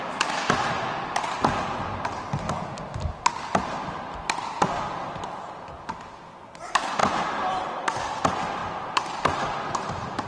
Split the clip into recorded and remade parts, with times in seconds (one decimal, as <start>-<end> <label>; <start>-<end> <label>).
0.0-10.3 recorded